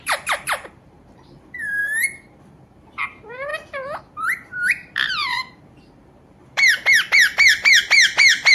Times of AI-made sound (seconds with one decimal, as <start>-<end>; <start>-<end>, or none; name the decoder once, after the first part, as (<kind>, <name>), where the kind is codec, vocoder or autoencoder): 0.0-1.8 (vocoder, BigVGAN v2); 2.4-3.5; 4.0-8.5